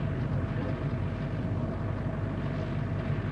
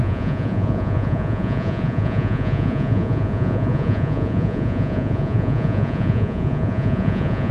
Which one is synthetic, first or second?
second